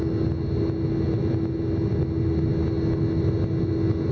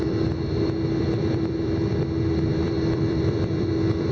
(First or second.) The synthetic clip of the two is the second